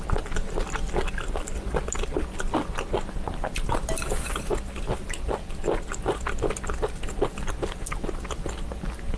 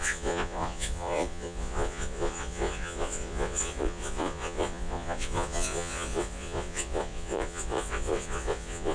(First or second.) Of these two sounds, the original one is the first